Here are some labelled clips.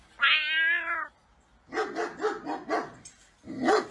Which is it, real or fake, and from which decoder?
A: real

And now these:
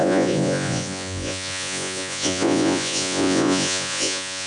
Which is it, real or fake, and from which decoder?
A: fake, vocoder, Vocos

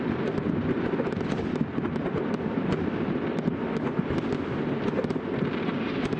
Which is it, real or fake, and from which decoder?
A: real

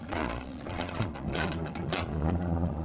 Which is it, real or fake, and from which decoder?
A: fake, vocoder, Vocos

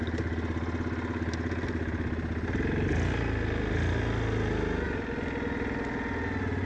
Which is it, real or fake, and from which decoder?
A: real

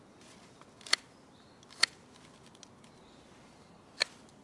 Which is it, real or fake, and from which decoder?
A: real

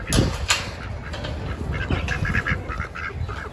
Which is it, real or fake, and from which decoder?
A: real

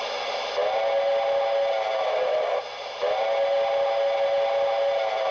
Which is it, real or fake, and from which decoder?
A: real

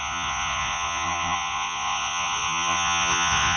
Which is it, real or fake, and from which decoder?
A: fake, vocoder, Vocos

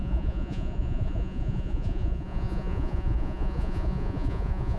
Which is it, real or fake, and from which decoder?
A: fake, vocoder, Vocos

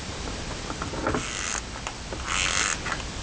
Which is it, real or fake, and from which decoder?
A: real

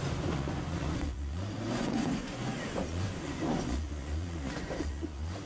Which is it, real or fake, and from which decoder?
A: fake, vocoder, Vocos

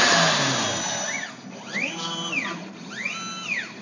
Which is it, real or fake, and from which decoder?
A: real